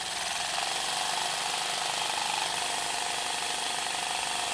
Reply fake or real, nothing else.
real